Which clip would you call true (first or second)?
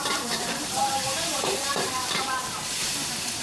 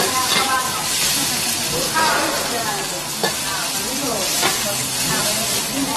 second